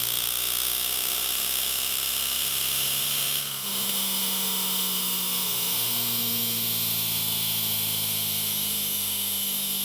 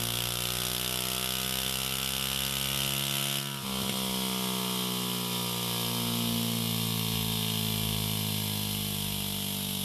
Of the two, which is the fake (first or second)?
first